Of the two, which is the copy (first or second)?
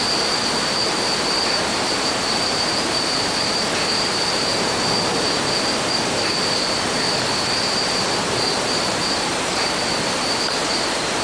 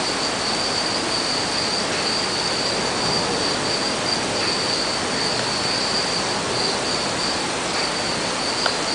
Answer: first